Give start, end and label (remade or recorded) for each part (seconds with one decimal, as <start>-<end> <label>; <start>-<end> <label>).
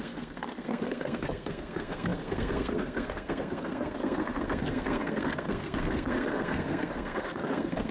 0.0-7.9 remade